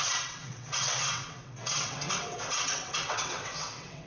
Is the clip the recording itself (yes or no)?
no